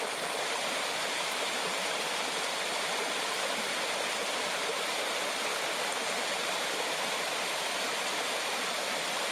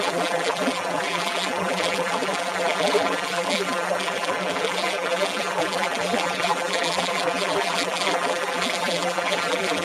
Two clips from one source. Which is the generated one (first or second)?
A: second